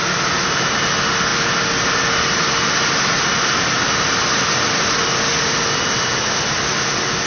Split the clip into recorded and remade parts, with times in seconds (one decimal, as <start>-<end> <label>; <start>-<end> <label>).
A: 0.0-7.3 recorded